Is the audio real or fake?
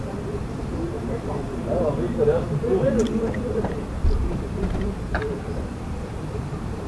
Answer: fake